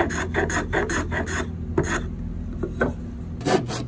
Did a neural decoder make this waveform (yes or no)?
no